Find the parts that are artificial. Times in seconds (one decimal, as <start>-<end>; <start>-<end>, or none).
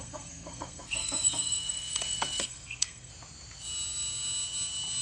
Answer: 0.0-3.1